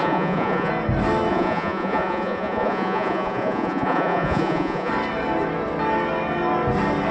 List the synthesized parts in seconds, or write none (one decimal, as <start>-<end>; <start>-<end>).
0.0-0.7; 1.3-4.9